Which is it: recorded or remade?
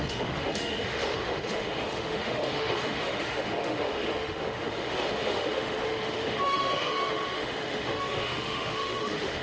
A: remade